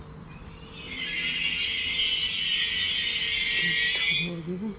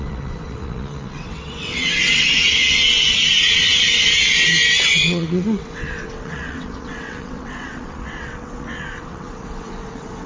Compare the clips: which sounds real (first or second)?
first